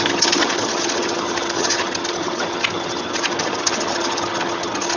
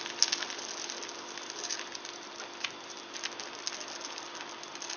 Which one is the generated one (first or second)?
first